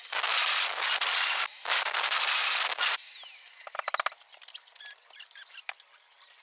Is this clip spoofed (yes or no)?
no